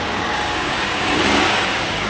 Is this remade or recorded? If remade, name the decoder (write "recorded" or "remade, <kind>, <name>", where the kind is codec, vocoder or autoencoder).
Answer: remade, codec, DAC